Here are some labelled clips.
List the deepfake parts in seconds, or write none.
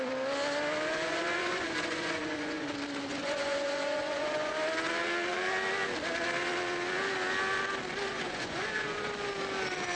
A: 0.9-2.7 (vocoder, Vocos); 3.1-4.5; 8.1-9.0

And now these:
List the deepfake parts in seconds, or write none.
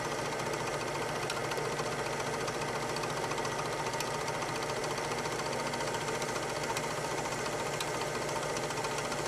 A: none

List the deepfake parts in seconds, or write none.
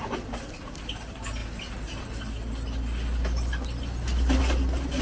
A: none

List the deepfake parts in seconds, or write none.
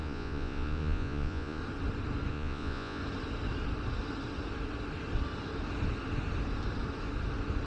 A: 0.0-1.6 (vocoder, Vocos); 2.3-3.0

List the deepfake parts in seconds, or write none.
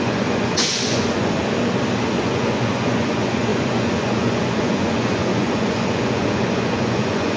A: 0.0-1.4 (vocoder, Vocos); 2.2-7.4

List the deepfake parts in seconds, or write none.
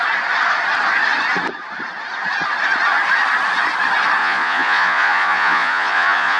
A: 4.2-6.4 (vocoder, Vocos)